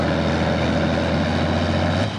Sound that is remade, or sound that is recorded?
recorded